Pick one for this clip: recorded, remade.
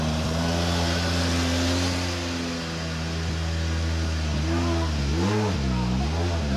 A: recorded